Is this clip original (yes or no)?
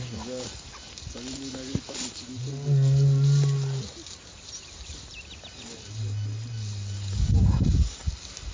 yes